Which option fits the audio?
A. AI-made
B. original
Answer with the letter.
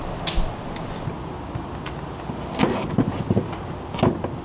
B